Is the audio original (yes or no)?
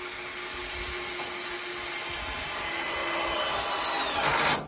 yes